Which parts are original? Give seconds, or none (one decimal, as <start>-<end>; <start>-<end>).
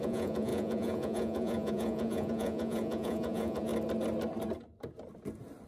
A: 3.7-5.7